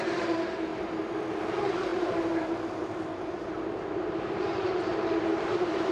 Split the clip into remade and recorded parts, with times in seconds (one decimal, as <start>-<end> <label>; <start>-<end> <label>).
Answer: 0.0-0.7 remade; 0.7-1.4 recorded; 1.4-5.9 remade

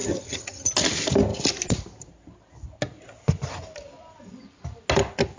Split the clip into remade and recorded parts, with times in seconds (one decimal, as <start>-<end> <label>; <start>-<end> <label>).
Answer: 0.0-0.7 remade; 0.7-5.4 recorded

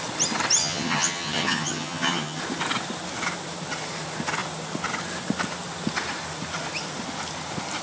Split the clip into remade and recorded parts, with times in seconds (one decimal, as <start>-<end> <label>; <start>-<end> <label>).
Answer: 0.0-0.6 recorded; 0.6-2.4 remade; 2.4-7.8 recorded

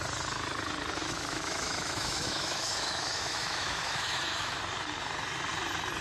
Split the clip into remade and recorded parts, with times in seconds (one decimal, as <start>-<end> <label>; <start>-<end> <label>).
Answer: 0.0-1.0 recorded; 1.0-4.6 remade; 4.6-6.0 recorded

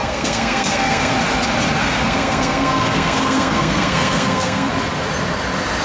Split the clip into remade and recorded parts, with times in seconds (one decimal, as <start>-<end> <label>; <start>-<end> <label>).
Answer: 0.0-1.1 remade; 1.1-1.8 recorded; 1.8-4.7 remade; 4.7-5.8 recorded

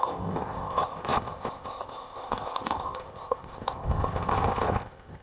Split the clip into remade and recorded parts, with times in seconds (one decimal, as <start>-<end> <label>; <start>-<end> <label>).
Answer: 0.0-5.2 remade